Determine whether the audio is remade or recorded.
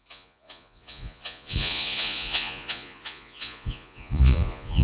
remade